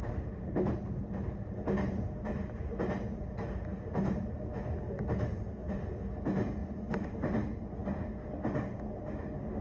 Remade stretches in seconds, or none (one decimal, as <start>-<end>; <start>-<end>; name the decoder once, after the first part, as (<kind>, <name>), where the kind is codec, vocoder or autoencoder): none